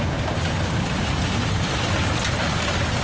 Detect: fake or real real